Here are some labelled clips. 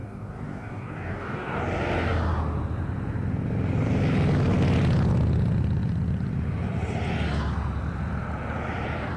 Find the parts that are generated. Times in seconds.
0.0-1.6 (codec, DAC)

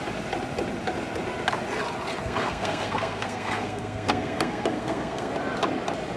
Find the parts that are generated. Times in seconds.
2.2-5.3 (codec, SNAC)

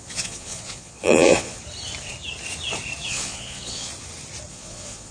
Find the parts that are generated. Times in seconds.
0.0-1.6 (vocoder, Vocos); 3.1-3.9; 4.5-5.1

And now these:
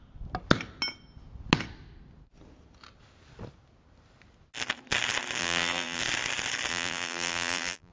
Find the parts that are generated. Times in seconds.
5.4-6.0 (vocoder, BigVGAN v2); 6.7-7.9

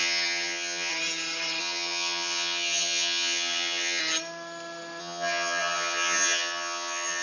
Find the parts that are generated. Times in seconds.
0.0-0.9 (vocoder, HiFi-GAN); 1.6-4.0; 5.0-7.2

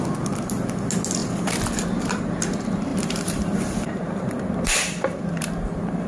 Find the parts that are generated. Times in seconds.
2.9-6.1 (vocoder, BigVGAN v2)

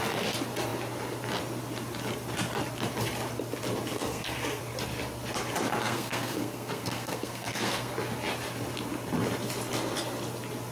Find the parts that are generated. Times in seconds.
3.9-4.6 (codec, SNAC); 5.7-7.9

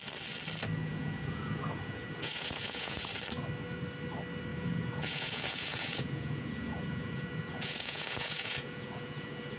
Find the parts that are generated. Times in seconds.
0.8-3.1 (vocoder, Vocos); 4.5-9.6